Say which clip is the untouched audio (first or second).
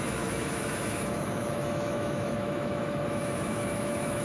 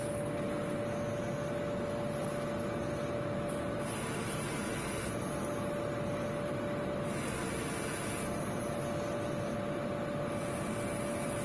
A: second